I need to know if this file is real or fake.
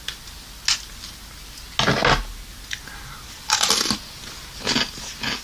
real